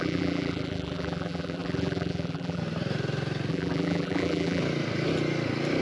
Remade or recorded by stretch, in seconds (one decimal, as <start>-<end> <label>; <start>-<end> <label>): 0.0-2.6 remade; 2.6-3.5 recorded; 3.5-4.6 remade; 4.6-5.8 recorded